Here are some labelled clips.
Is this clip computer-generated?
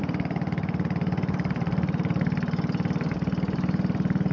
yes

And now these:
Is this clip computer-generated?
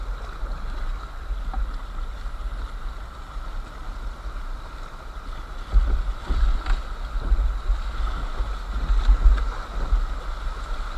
no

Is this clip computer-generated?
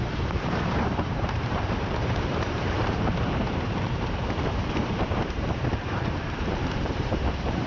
yes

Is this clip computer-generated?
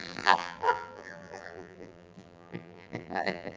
yes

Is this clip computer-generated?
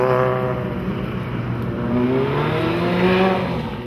no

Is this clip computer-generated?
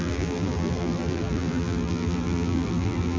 yes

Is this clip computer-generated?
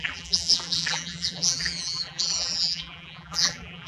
yes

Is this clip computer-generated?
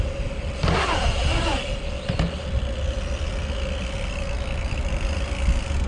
no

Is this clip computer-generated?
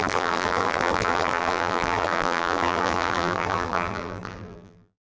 yes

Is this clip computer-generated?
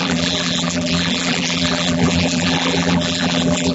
yes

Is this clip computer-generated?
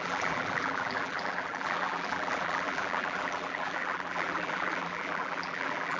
yes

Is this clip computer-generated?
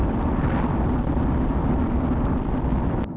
yes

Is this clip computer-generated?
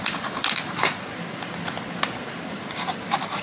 no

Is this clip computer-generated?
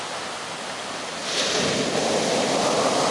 no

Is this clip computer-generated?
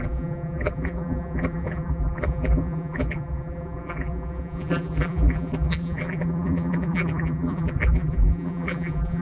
yes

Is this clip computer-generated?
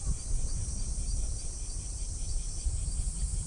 yes